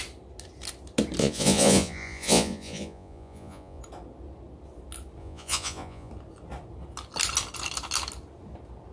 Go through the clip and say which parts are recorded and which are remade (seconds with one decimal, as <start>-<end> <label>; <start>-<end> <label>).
0.0-1.2 recorded; 1.2-3.8 remade; 3.8-5.2 recorded; 5.2-6.1 remade; 6.1-8.9 recorded

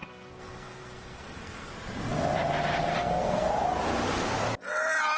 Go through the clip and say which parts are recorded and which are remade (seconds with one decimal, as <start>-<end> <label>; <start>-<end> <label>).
0.0-1.7 remade; 1.7-2.9 recorded; 2.9-3.5 remade; 3.5-5.2 recorded

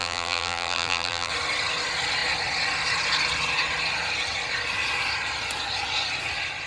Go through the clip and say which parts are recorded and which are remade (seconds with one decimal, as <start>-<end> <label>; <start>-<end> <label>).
0.0-1.3 remade; 1.3-6.7 recorded

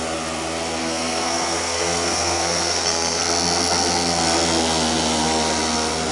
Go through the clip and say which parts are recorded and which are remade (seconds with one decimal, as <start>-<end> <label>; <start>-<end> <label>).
0.0-0.8 recorded; 0.8-3.2 remade; 3.2-6.1 recorded

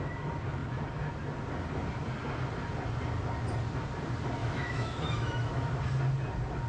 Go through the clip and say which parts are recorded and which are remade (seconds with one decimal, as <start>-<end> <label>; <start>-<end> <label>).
0.0-4.4 recorded; 4.4-5.7 remade; 5.7-6.7 recorded

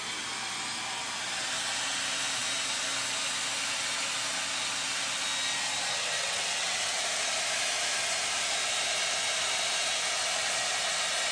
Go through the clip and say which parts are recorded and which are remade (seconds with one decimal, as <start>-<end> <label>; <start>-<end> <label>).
0.0-6.2 recorded; 6.2-7.0 remade; 7.0-11.3 recorded

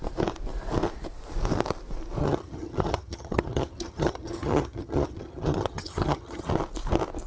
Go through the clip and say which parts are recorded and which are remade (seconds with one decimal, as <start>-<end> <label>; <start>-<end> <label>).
0.0-2.2 recorded; 2.2-6.5 remade; 6.5-7.3 recorded